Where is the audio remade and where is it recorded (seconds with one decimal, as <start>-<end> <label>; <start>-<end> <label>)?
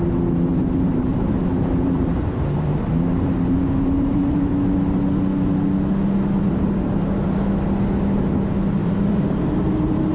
0.0-0.5 recorded; 0.5-4.5 remade; 4.5-8.8 recorded; 8.8-10.1 remade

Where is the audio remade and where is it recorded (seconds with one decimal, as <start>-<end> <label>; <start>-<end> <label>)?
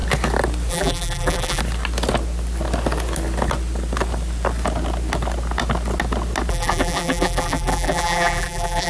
0.0-0.7 recorded; 0.7-1.6 remade; 1.6-6.5 recorded; 6.5-8.9 remade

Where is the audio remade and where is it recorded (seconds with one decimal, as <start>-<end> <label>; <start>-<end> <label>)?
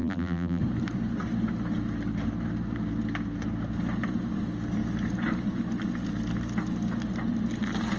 0.0-0.6 remade; 0.6-8.0 recorded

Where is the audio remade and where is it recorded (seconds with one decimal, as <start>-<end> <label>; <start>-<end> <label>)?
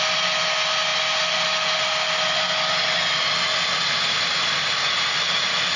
0.0-5.8 recorded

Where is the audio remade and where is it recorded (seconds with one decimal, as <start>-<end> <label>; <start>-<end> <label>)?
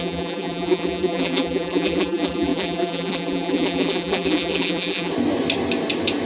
0.0-5.1 remade; 5.1-6.3 recorded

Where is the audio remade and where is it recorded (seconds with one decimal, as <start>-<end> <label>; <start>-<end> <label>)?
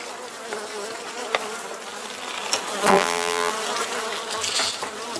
0.0-2.9 recorded; 2.9-3.5 remade; 3.5-5.2 recorded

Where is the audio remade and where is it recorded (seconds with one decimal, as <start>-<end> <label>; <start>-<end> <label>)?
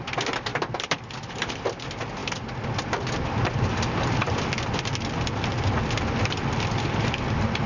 0.0-0.5 recorded; 0.5-1.5 remade; 1.5-2.2 recorded; 2.2-4.4 remade; 4.4-7.7 recorded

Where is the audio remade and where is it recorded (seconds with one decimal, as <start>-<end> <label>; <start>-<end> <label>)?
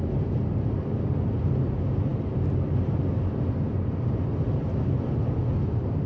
0.0-6.1 recorded